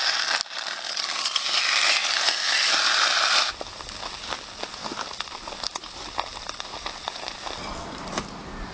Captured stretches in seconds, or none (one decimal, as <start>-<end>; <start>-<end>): 0.0-3.5; 4.2-4.7